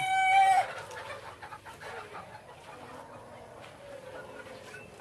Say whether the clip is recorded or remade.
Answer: recorded